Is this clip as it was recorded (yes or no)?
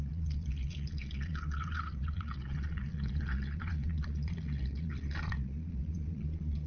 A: no